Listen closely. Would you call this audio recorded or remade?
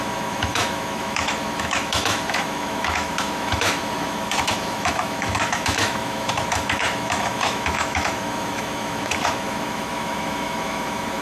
remade